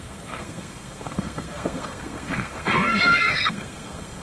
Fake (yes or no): yes